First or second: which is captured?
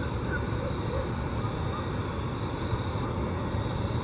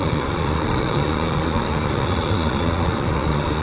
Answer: first